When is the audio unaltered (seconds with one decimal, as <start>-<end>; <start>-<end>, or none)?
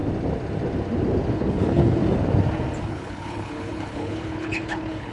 0.0-1.3; 2.0-2.8